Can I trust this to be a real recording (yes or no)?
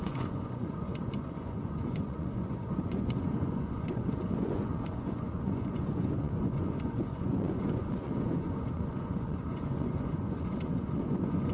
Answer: no